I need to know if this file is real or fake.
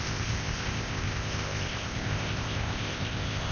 fake